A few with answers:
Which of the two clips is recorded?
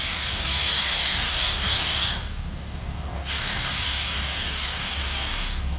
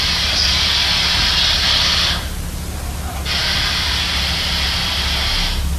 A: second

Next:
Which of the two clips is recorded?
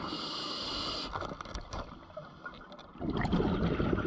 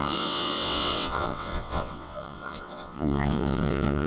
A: first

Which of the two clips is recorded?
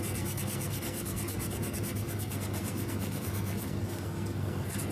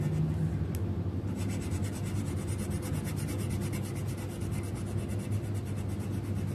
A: second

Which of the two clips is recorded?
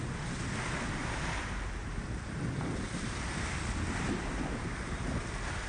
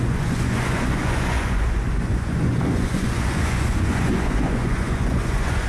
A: first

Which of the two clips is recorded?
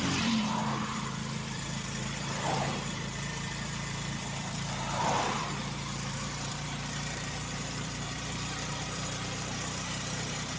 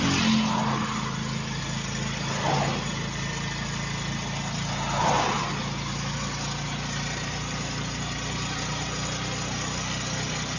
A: second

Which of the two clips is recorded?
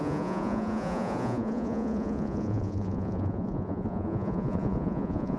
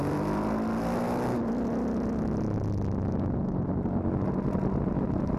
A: second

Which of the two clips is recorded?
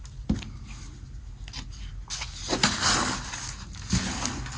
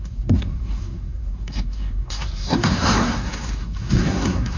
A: first